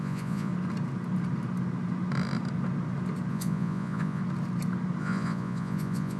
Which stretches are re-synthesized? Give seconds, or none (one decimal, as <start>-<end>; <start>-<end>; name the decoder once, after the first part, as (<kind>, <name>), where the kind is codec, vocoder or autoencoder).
0.0-0.5 (vocoder, Vocos); 3.3-4.2; 5.0-6.2